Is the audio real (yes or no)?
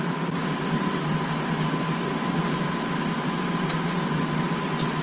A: yes